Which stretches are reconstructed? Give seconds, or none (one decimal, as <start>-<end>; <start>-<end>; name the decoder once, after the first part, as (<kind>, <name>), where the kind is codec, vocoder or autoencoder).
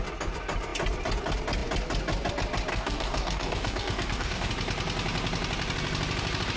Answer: 2.7-4.5 (codec, DAC)